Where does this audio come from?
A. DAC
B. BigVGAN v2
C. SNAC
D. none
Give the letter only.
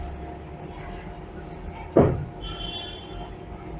D